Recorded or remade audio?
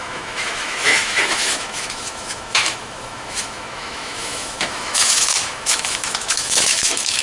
remade